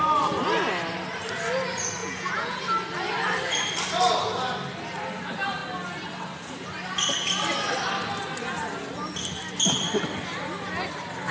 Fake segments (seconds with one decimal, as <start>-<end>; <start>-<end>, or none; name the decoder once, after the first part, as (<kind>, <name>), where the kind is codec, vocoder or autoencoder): 2.0-2.6 (vocoder, Vocos)